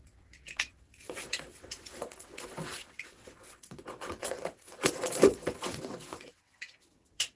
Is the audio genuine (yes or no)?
no